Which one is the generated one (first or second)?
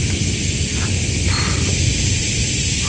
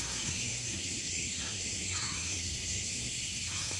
second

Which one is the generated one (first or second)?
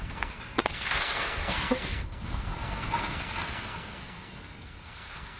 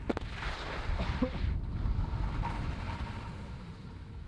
first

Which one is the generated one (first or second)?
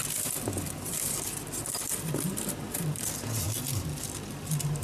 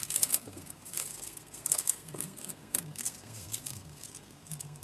second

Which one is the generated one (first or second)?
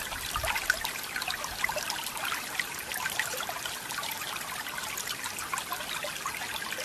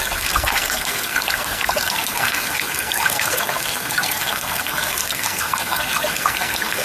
second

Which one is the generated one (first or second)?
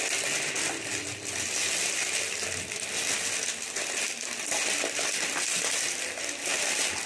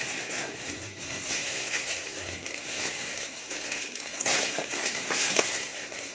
second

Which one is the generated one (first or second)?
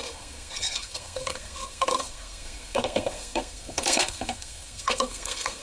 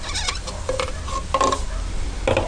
first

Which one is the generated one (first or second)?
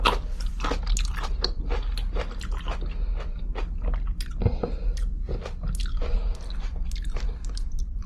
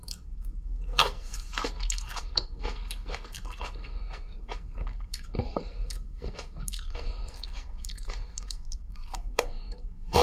second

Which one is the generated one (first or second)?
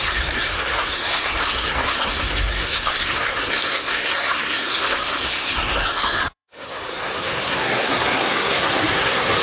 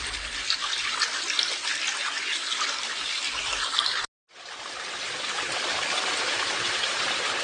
first